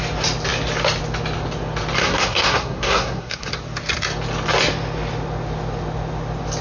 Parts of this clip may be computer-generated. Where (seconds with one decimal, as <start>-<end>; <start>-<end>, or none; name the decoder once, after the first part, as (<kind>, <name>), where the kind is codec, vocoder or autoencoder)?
2.0-3.5 (codec, SNAC)